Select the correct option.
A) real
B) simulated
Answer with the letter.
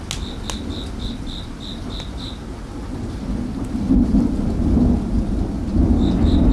A